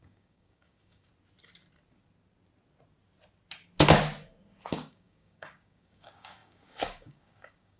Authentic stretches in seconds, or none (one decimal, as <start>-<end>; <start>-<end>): 1.1-4.7